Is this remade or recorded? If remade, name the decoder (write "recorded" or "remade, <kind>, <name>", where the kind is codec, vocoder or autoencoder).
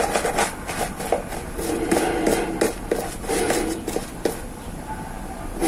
recorded